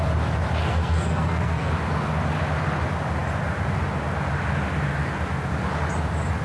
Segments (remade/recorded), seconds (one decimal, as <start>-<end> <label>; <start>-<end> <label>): 0.0-0.6 recorded; 0.6-1.7 remade; 1.7-6.4 recorded